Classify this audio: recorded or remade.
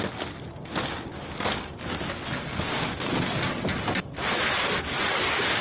recorded